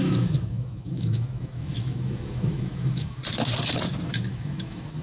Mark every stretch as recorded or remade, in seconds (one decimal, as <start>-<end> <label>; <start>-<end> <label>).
0.0-3.2 remade; 3.2-4.3 recorded; 4.3-5.0 remade